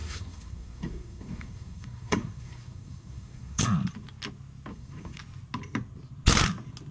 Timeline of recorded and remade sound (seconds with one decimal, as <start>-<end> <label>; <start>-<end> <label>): 0.0-3.6 remade; 3.6-4.7 recorded; 4.7-5.2 remade; 5.2-6.9 recorded